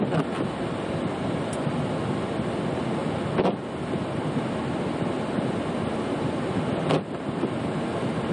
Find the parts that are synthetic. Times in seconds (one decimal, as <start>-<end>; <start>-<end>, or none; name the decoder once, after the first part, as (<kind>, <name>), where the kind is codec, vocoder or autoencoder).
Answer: none